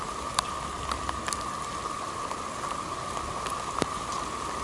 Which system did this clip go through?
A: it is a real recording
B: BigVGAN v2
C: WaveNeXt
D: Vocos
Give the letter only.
B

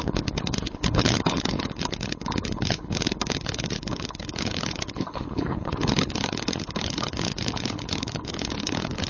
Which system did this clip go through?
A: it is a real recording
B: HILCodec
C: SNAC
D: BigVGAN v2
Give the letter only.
B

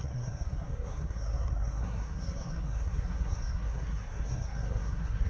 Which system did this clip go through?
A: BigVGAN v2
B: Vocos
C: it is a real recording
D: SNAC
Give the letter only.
D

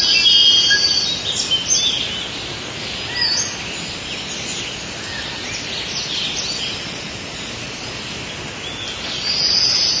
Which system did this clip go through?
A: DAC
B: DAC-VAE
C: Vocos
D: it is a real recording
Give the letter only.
D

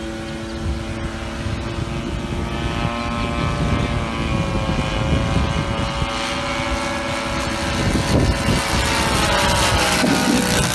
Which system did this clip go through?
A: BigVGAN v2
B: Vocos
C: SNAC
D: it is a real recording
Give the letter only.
D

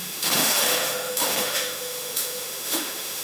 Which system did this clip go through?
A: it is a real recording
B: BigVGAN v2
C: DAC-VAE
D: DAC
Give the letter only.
C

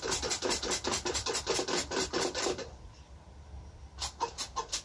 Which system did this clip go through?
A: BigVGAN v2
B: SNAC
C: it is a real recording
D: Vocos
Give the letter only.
A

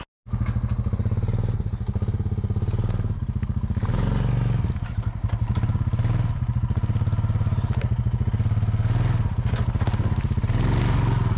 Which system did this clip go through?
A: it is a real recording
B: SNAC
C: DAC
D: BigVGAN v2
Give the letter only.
A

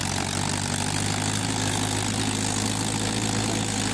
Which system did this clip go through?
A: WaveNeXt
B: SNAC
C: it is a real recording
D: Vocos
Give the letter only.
C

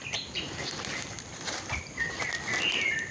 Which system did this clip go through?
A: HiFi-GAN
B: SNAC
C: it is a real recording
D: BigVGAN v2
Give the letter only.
C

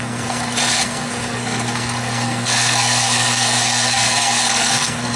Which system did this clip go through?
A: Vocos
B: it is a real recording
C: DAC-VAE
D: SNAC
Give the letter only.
D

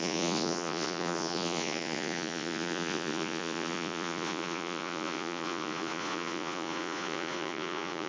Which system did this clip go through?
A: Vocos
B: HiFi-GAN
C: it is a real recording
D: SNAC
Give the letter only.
A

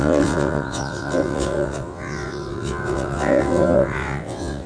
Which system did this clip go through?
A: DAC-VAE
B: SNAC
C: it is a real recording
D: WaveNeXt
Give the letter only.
D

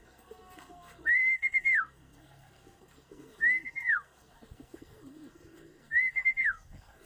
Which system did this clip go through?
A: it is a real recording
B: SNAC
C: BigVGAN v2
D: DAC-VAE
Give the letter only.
B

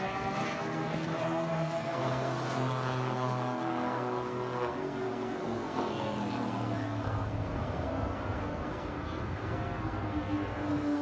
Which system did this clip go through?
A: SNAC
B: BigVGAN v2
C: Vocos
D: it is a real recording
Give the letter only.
A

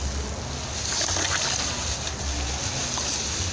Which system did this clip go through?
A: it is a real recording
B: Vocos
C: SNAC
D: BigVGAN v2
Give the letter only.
A